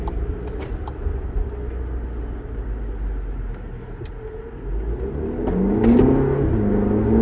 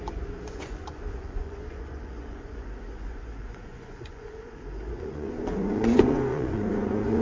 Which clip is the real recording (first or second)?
first